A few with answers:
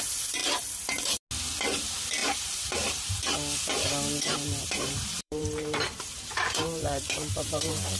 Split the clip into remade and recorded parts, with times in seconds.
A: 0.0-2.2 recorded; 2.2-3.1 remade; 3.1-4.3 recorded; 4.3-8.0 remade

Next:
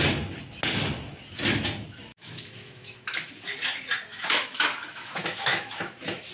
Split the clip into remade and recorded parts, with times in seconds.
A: 0.0-2.1 recorded; 2.1-3.3 remade; 3.3-4.1 recorded; 4.1-6.3 remade

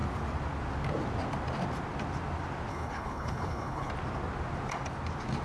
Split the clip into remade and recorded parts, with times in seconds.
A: 0.0-2.7 recorded; 2.7-3.9 remade; 3.9-5.4 recorded